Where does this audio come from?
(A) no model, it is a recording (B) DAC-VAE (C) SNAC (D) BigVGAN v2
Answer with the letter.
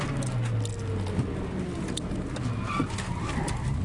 A